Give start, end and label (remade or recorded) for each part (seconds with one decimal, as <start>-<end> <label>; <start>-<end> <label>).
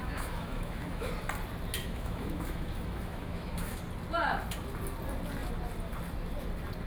0.0-1.1 remade; 1.1-1.8 recorded; 1.8-3.8 remade; 3.8-6.9 recorded